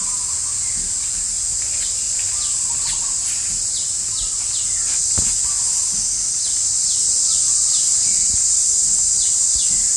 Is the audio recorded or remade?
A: recorded